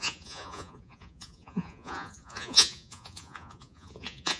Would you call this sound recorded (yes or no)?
no